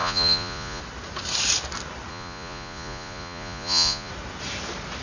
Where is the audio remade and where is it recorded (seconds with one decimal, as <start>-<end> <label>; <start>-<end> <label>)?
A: 0.0-0.8 remade; 0.8-2.1 recorded; 2.1-4.1 remade; 4.1-5.0 recorded